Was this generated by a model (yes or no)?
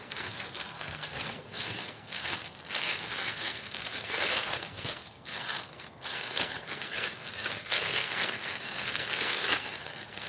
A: yes